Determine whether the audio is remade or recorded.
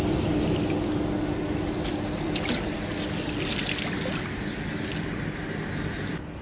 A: recorded